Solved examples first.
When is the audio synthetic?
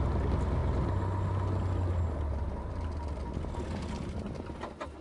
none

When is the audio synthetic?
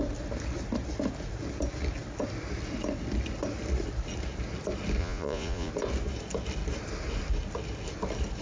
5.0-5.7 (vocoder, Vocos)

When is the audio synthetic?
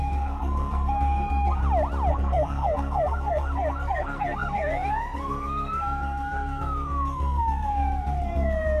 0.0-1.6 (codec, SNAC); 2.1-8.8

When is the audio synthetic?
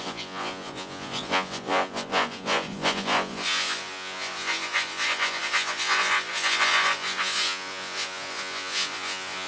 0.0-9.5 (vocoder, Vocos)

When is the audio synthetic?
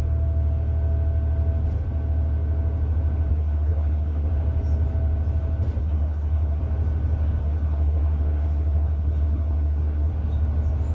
3.3-4.3 (codec, SNAC); 5.8-6.6; 7.4-10.1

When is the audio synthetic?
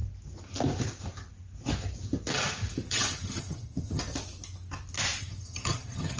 2.9-4.0 (vocoder, HiFi-GAN); 5.2-6.2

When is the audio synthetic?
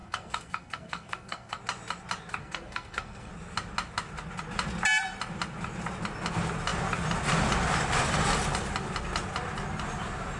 0.0-1.6 (codec, SNAC); 2.4-3.3